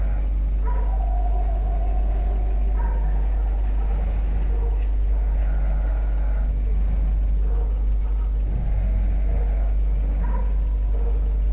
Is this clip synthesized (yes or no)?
no